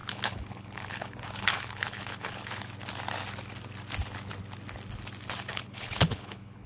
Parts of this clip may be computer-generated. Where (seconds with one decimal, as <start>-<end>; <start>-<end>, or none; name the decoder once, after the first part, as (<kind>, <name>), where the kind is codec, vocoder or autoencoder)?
0.0-2.6 (codec, HILCodec); 5.5-6.7